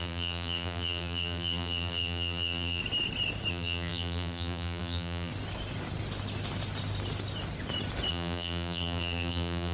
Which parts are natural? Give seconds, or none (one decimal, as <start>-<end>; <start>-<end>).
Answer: 2.8-3.5; 5.3-8.1